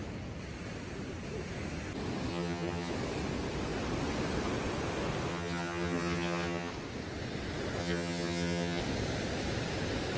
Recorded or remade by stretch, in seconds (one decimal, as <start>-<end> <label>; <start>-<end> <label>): 0.0-2.3 recorded; 2.3-2.9 remade; 2.9-5.3 recorded; 5.3-6.7 remade; 6.7-7.8 recorded; 7.8-8.8 remade; 8.8-10.2 recorded